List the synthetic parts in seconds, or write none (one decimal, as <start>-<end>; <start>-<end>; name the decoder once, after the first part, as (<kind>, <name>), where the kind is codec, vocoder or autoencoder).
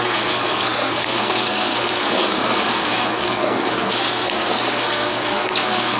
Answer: 0.0-6.0 (codec, SNAC)